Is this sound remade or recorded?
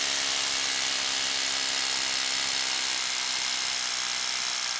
recorded